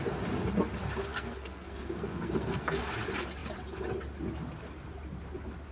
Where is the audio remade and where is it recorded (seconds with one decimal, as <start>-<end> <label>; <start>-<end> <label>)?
0.0-1.1 recorded; 1.1-2.8 remade; 2.8-5.7 recorded